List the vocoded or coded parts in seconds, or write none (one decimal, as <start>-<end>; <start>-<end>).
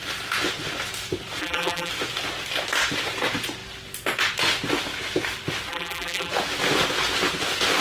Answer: 1.4-1.9; 5.7-6.3